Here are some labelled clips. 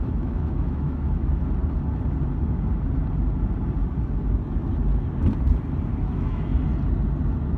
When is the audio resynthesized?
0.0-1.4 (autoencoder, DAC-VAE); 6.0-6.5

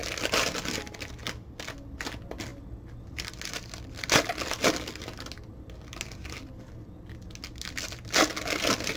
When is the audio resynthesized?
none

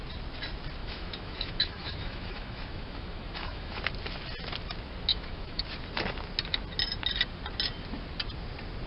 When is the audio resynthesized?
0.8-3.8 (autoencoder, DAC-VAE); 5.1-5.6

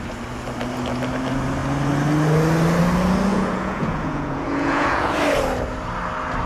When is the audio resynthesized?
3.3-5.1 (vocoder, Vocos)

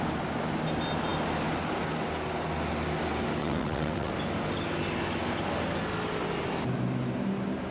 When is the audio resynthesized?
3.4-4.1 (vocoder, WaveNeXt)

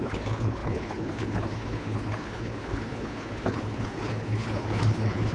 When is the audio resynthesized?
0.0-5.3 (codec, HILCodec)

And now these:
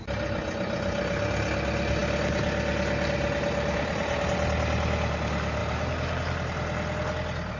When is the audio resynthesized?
none